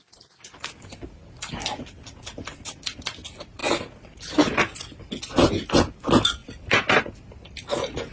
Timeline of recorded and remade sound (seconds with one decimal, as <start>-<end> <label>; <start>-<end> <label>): 0.0-8.1 recorded